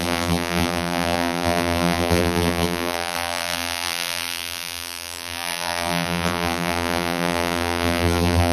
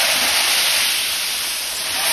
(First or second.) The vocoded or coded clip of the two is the first